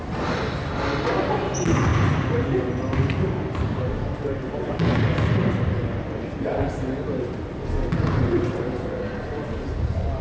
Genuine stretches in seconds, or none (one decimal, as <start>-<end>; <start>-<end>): 0.0-10.2